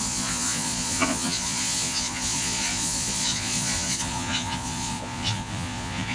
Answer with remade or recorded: remade